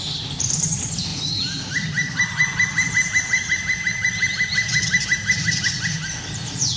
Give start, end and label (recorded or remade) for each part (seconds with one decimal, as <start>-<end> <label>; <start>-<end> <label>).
0.0-6.8 recorded